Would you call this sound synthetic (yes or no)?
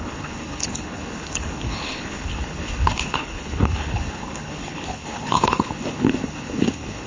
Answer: yes